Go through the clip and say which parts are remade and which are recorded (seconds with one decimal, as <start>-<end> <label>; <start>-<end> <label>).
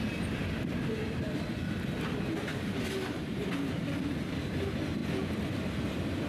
0.0-2.5 recorded; 2.5-3.2 remade; 3.2-6.3 recorded